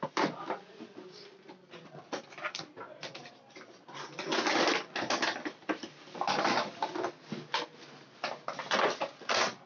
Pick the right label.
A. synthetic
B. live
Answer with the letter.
B